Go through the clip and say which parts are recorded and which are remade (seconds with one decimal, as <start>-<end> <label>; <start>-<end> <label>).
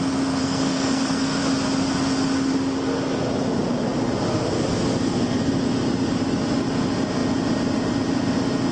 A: 0.0-0.4 recorded; 0.4-1.4 remade; 1.4-8.7 recorded